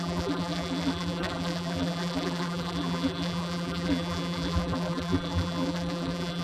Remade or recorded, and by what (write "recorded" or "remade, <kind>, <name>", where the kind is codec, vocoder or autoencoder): remade, vocoder, BigVGAN v2